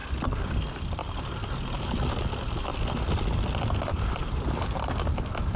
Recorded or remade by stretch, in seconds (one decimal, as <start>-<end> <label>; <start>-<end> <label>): 0.0-5.6 recorded